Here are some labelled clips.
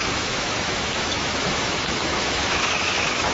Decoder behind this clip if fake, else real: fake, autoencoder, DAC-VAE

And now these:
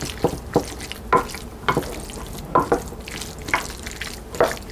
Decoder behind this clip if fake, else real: real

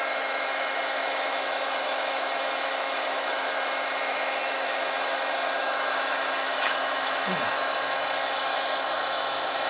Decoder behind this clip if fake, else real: fake, autoencoder, DAC-VAE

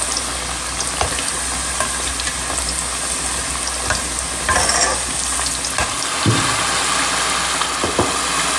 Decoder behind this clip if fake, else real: real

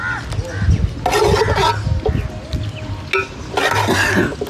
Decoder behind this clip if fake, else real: real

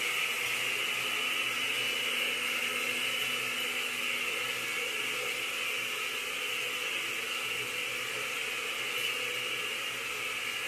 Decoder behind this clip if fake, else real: real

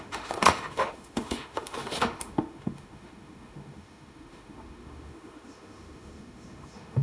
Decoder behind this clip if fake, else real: fake, autoencoder, DAC-VAE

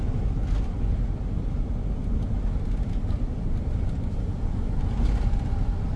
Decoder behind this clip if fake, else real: real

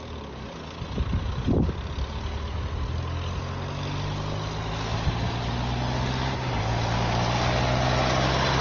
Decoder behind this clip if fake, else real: real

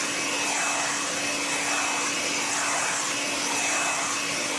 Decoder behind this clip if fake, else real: real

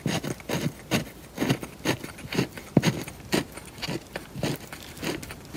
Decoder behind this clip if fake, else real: real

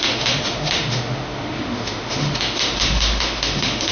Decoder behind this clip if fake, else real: fake, autoencoder, DAC-VAE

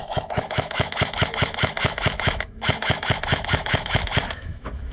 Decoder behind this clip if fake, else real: fake, autoencoder, DAC-VAE